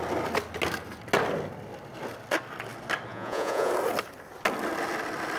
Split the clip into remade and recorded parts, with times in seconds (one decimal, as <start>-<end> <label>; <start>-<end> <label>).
0.0-3.1 recorded; 3.1-3.7 remade; 3.7-5.4 recorded